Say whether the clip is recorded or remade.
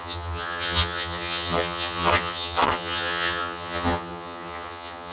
remade